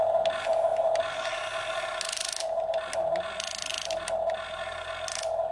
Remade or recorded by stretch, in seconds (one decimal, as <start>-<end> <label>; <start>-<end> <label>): 0.0-5.5 recorded